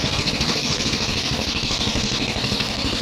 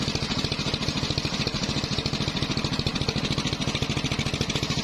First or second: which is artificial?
first